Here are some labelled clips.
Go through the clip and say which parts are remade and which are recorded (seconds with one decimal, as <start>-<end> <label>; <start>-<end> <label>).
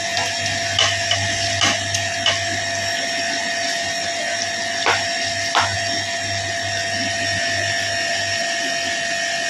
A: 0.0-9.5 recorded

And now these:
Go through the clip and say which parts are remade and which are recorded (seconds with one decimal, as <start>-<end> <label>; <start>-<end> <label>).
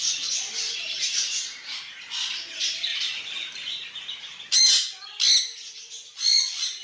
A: 0.0-2.9 recorded; 2.9-4.7 remade; 4.7-6.8 recorded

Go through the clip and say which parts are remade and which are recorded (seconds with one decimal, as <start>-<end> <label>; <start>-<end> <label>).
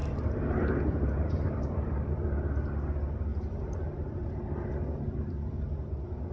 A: 0.0-2.1 remade; 2.1-3.3 recorded; 3.3-4.8 remade; 4.8-6.3 recorded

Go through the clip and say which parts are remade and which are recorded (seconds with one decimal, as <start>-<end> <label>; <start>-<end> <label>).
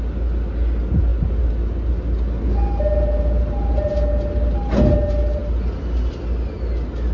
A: 0.0-7.1 recorded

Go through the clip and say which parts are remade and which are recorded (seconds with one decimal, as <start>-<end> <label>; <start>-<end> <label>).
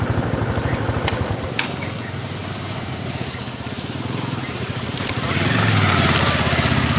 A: 0.0-2.4 recorded; 2.4-5.6 remade; 5.6-7.0 recorded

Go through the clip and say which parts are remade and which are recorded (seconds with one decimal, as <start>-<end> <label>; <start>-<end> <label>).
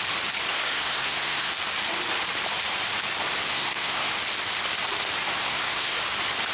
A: 0.0-0.5 recorded; 0.5-1.5 remade; 1.5-3.5 recorded; 3.5-4.1 remade; 4.1-5.4 recorded; 5.4-6.0 remade; 6.0-6.5 recorded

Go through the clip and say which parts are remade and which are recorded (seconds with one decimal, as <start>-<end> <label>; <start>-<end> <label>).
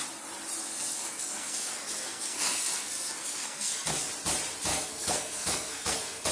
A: 0.0-0.6 recorded; 0.6-4.1 remade; 4.1-4.7 recorded; 4.7-6.3 remade